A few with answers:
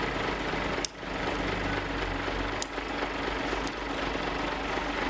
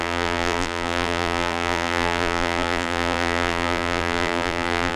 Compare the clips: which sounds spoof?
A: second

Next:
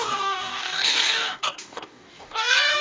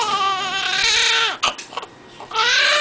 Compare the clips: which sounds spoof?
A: first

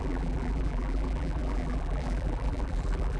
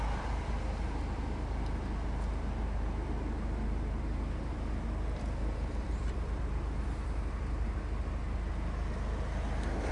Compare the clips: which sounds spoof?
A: first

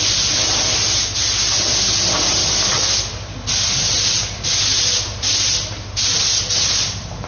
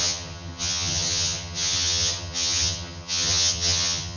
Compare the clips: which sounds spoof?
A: second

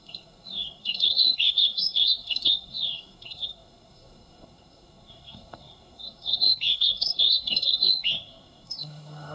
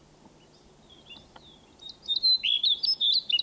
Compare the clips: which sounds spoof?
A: first